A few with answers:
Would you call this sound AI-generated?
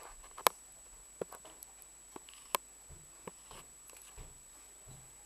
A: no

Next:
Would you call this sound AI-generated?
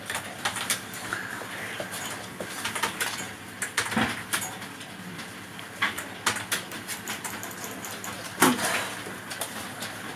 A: no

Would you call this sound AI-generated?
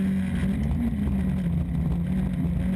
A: no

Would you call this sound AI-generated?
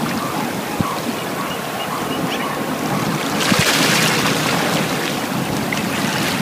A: no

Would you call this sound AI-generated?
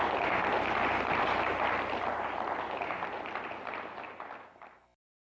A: no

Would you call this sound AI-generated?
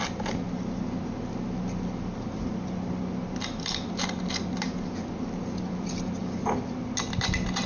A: no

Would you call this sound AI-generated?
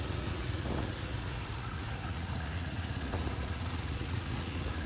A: yes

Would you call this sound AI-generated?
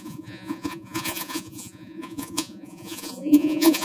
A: yes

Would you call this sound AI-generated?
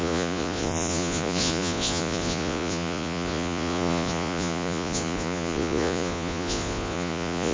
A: yes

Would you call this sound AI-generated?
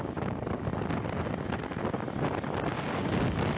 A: no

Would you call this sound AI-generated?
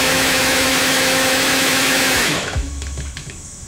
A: yes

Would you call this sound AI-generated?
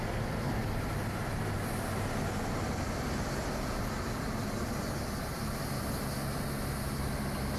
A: no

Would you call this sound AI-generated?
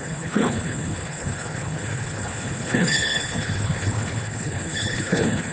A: yes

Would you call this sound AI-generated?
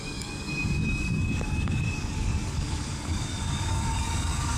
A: yes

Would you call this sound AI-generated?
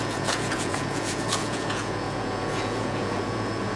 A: yes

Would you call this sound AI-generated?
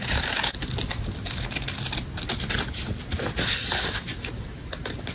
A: no